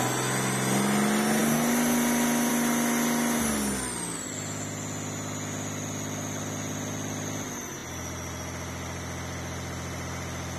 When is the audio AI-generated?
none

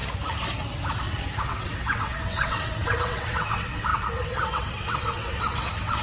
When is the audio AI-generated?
1.4-6.0 (vocoder, WaveNeXt)

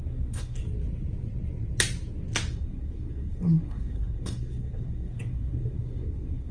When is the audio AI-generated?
0.0-0.6 (codec, SNAC); 2.5-6.5